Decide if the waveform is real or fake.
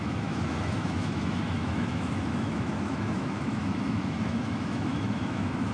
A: fake